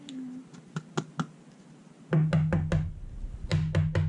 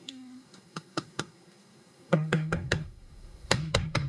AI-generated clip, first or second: second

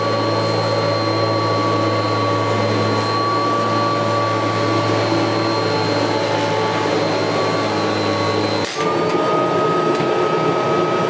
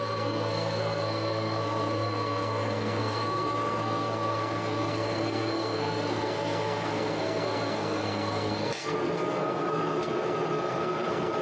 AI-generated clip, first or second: second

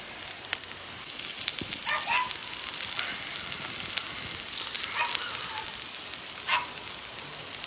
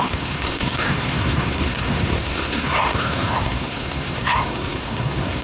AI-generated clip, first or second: second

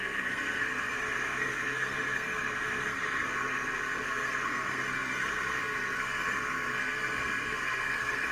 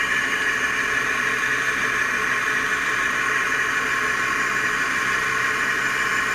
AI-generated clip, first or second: first